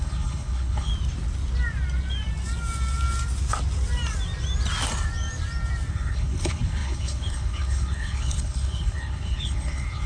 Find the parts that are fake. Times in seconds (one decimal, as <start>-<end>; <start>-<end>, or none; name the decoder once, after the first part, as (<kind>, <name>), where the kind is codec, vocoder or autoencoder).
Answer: 0.0-0.9 (codec, HILCodec); 5.9-10.1